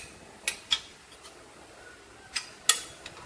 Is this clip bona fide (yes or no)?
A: yes